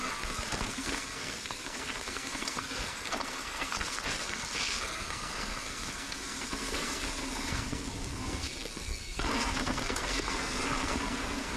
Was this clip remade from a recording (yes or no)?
yes